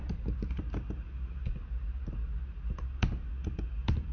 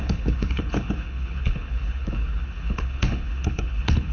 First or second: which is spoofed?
second